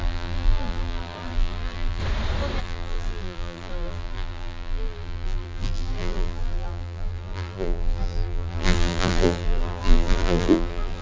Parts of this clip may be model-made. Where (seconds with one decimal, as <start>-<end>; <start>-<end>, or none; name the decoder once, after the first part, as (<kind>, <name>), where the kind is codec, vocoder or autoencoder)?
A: 0.0-2.0 (vocoder, BigVGAN v2); 2.6-11.0

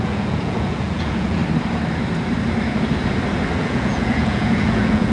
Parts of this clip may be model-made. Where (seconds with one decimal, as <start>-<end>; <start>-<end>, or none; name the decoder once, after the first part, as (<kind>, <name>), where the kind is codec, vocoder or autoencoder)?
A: 0.0-1.4 (vocoder, Vocos); 3.6-5.1

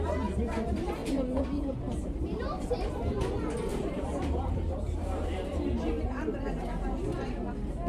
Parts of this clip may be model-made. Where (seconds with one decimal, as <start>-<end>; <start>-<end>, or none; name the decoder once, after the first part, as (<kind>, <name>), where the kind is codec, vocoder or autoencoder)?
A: 1.0-3.3 (vocoder, BigVGAN v2); 3.7-5.5